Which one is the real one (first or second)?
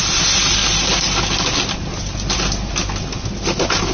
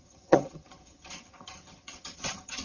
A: first